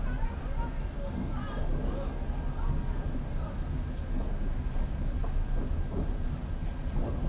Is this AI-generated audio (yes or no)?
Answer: no